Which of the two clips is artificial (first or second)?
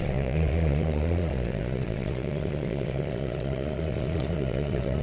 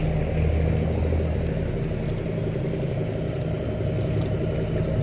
first